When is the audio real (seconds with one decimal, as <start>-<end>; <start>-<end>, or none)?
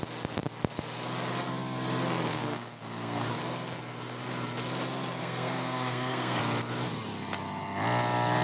0.0-2.3; 3.4-5.2; 6.4-8.4